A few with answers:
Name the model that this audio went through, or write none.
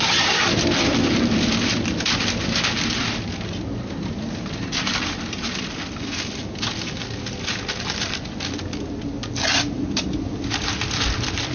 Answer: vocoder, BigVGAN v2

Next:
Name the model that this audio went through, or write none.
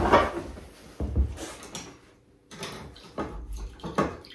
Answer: none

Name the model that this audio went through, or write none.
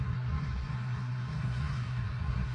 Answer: codec, SNAC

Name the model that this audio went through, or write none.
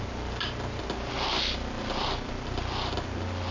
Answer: none